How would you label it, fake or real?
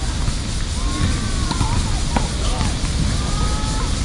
real